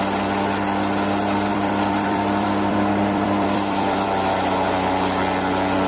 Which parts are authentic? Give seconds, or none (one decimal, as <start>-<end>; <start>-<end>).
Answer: 0.0-1.5; 4.3-5.9